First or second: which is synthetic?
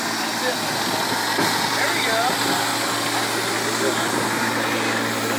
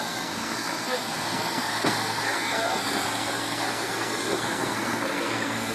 second